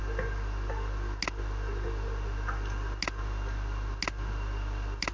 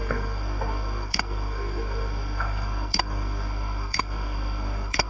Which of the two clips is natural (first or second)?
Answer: first